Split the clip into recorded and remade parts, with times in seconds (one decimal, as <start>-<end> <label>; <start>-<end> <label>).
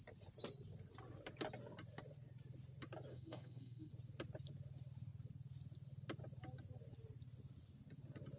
0.0-3.1 recorded; 3.1-3.9 remade; 3.9-8.4 recorded